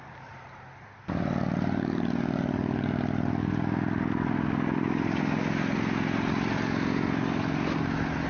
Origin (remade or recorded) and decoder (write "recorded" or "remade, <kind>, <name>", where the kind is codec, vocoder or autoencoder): recorded